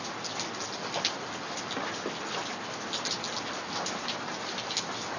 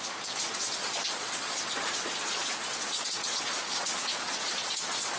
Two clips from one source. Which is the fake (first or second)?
second